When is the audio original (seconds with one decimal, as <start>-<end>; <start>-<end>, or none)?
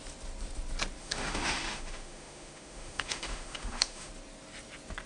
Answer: 0.0-1.0; 4.1-5.1